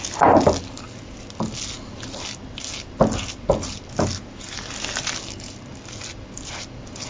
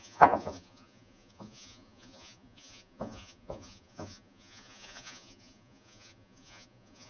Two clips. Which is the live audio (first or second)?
first